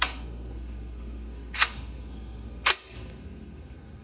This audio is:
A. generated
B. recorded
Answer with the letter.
A